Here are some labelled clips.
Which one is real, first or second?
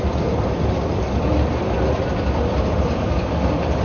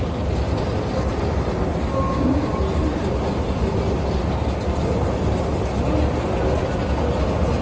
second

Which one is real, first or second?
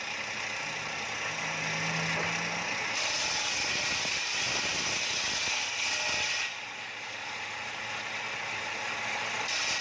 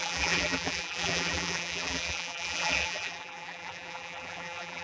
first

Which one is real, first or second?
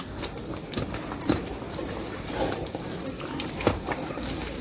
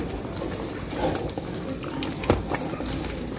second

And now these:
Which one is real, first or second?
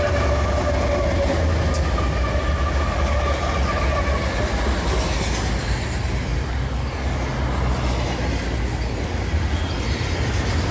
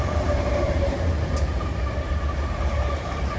first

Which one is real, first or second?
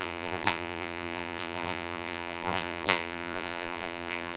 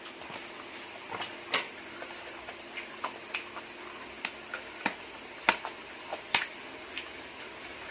second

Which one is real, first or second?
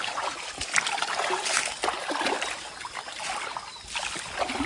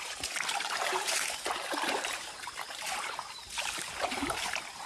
first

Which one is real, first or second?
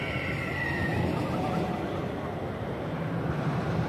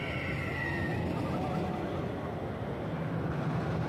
second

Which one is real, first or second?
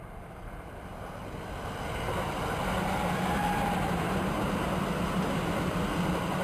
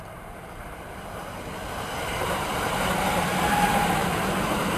first